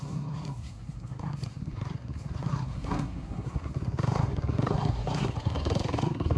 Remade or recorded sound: remade